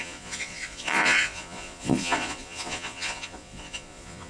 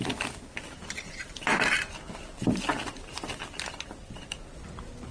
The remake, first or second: first